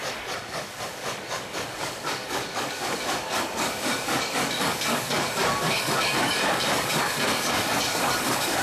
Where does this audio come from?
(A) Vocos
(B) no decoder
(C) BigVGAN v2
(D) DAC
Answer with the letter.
D